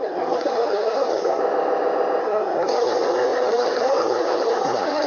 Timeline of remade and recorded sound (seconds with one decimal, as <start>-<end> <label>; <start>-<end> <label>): 0.0-1.4 remade; 1.4-2.2 recorded; 2.2-5.1 remade